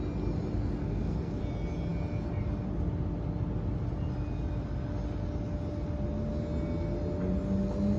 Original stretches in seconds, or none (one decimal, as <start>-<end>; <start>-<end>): 0.0-0.8; 1.4-8.0